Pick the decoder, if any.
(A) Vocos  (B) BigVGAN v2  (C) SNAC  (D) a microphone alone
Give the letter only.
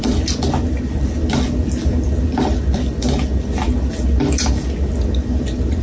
D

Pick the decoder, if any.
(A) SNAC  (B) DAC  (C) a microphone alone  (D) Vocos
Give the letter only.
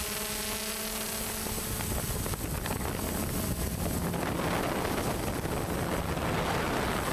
C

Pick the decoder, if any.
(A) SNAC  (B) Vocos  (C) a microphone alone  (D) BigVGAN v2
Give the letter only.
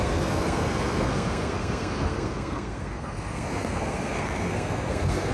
A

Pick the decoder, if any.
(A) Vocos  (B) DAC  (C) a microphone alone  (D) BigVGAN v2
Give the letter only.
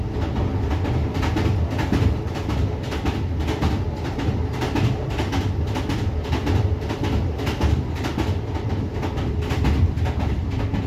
C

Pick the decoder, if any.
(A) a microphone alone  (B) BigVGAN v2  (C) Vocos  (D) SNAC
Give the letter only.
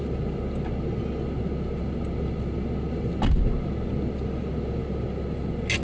A